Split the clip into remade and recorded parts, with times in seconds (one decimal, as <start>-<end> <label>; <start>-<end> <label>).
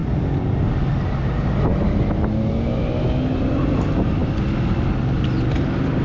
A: 0.0-6.0 recorded